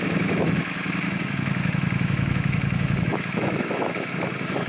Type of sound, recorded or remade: remade